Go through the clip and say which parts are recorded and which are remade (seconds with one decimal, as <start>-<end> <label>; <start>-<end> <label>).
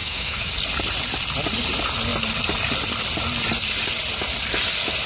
0.0-0.5 remade; 0.5-5.1 recorded